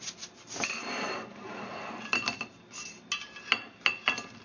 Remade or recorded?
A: recorded